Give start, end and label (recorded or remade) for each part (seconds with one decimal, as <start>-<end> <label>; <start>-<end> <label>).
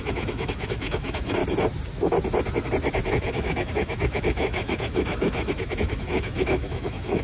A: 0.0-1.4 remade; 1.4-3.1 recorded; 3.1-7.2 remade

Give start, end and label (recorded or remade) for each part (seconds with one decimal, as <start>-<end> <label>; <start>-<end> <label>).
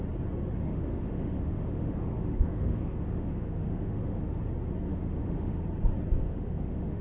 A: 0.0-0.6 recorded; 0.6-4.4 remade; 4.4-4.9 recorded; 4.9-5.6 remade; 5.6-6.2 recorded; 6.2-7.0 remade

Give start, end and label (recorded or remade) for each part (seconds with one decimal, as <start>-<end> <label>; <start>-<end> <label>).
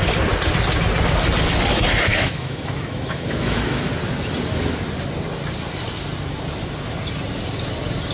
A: 0.0-2.1 recorded; 2.1-3.9 remade; 3.9-8.1 recorded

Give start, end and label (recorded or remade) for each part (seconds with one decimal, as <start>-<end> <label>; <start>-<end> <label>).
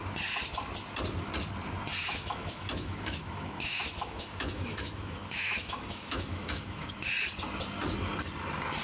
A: 0.0-2.0 recorded; 2.0-7.1 remade; 7.1-8.8 recorded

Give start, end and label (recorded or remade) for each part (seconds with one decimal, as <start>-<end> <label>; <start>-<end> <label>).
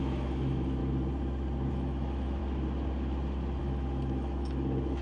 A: 0.0-0.8 remade; 0.8-1.7 recorded; 1.7-2.4 remade; 2.4-3.6 recorded; 3.6-5.0 remade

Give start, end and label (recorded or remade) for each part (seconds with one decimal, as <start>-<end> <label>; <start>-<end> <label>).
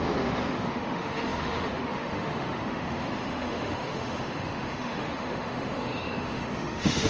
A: 0.0-7.1 remade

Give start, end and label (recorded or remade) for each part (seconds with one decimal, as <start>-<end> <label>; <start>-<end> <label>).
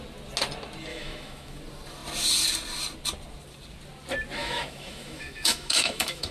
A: 0.0-0.9 recorded; 0.9-1.6 remade; 1.6-4.4 recorded; 4.4-6.3 remade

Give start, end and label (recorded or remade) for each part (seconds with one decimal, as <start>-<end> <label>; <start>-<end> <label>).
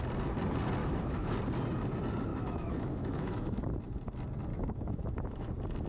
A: 0.0-0.8 recorded; 0.8-1.3 remade; 1.3-2.3 recorded; 2.3-3.6 remade; 3.6-4.5 recorded; 4.5-5.5 remade; 5.5-5.9 recorded